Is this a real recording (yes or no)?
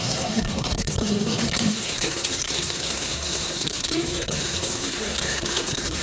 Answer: no